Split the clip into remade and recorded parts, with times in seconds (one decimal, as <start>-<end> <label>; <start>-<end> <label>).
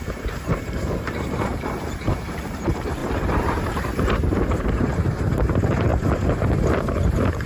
0.0-7.5 remade